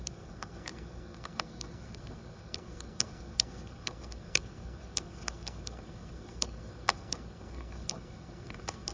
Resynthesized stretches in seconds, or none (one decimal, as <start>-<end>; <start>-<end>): 0.0-8.9